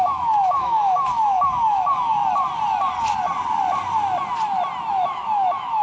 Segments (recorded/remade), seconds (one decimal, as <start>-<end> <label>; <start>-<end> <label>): 0.0-2.2 remade; 2.2-4.9 recorded; 4.9-5.8 remade